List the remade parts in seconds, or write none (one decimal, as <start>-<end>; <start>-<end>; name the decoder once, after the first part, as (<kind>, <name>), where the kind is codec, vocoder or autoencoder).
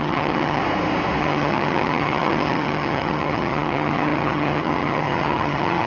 0.0-0.6 (vocoder, HiFi-GAN); 1.2-5.9